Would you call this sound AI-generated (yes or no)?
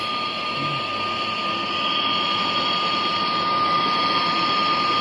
no